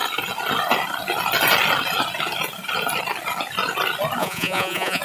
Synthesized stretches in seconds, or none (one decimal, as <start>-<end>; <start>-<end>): 4.2-5.0